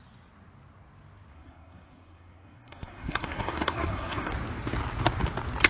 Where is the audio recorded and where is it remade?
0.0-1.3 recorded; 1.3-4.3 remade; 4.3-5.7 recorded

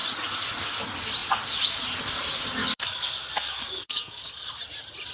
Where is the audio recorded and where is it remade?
0.0-2.6 recorded; 2.6-4.5 remade; 4.5-5.1 recorded

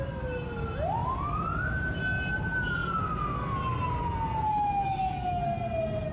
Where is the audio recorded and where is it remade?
0.0-4.5 recorded; 4.5-5.4 remade; 5.4-6.1 recorded

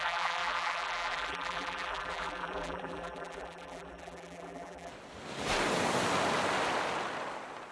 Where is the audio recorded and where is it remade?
0.0-4.9 remade; 4.9-7.7 recorded